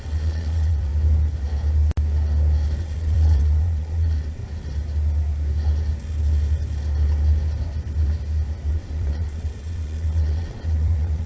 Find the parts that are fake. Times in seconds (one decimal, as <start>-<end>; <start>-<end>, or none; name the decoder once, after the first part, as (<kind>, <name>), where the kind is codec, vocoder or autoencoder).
0.0-0.9 (vocoder, WaveNeXt); 2.8-4.4; 8.7-11.3